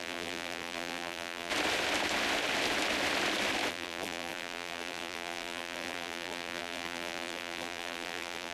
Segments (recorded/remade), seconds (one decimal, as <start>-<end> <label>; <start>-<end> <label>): 0.0-1.5 remade; 1.5-3.7 recorded; 3.7-8.5 remade